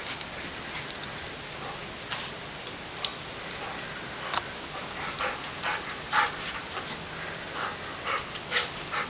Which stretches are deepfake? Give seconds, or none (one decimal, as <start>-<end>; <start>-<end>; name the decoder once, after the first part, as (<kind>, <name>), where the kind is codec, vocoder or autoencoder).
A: none